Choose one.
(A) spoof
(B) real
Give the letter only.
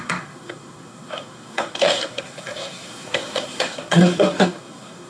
A